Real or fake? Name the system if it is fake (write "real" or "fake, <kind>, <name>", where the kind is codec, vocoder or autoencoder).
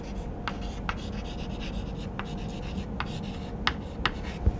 real